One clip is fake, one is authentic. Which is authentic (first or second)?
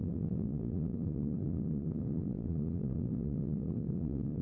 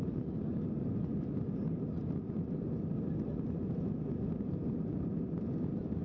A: second